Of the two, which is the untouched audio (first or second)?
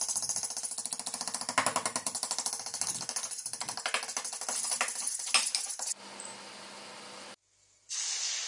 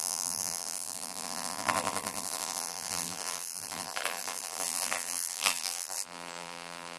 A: first